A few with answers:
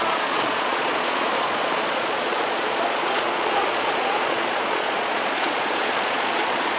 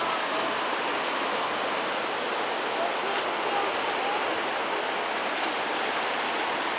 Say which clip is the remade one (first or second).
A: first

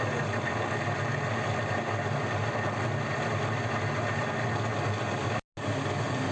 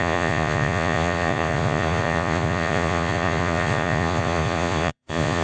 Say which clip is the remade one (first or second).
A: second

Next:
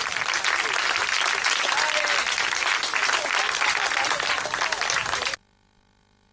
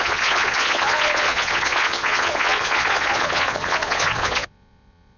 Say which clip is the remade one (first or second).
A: second